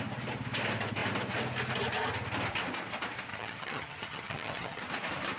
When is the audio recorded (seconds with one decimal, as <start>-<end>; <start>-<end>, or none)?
0.0-3.3; 4.8-5.4